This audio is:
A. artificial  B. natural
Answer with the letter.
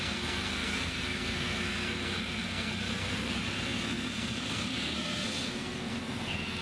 A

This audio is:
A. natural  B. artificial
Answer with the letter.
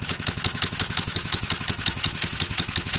B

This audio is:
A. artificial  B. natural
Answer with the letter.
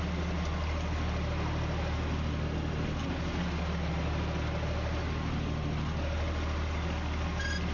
B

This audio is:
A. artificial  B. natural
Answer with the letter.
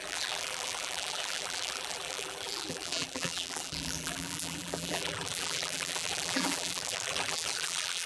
A